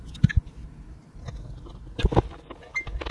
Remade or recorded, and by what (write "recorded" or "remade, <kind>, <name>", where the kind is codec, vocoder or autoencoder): recorded